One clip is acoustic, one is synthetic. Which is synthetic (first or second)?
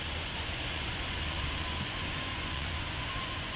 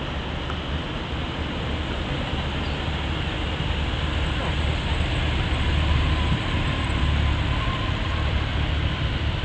first